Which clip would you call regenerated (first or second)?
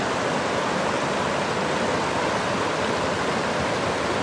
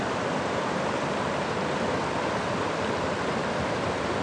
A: second